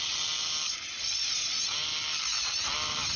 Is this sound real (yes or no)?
yes